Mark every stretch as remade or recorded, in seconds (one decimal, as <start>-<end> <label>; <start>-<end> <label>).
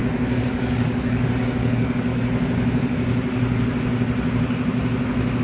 0.0-0.5 recorded; 0.5-2.1 remade; 2.1-5.4 recorded